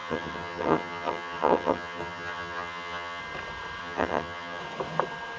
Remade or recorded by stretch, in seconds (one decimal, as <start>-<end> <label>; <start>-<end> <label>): 0.0-3.2 remade; 3.2-3.8 recorded; 3.8-4.6 remade; 4.6-5.4 recorded